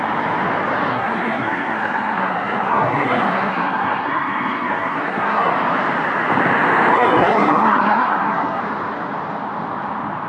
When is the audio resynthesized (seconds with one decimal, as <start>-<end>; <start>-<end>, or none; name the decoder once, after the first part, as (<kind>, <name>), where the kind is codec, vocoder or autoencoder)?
0.9-5.5 (codec, SNAC); 6.9-8.6